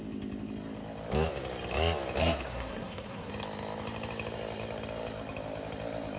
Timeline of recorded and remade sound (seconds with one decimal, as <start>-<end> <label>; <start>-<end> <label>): 0.0-2.2 recorded; 2.2-3.3 remade; 3.3-6.2 recorded